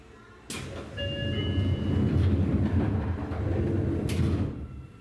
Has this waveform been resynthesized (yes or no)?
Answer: no